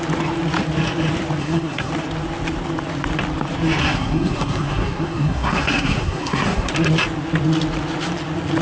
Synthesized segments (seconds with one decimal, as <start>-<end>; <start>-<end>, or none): 1.4-1.9; 3.8-6.7